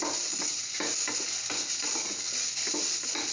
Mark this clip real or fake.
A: real